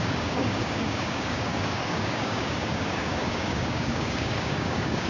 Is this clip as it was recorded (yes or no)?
no